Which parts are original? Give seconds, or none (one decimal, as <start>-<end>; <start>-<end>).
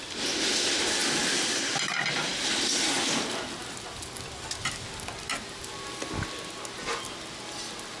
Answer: 0.0-8.0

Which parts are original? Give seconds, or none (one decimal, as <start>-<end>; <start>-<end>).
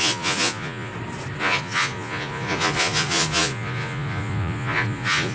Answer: 0.9-1.4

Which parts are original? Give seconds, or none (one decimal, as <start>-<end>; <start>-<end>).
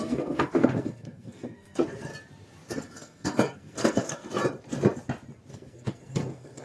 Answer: 2.1-2.7; 4.4-5.5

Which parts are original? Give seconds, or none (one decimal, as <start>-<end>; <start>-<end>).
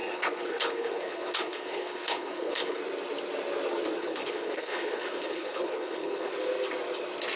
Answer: 2.8-4.0; 6.3-7.4